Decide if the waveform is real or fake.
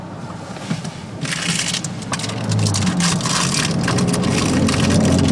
real